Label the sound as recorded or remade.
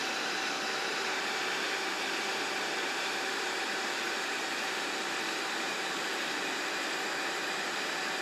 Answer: remade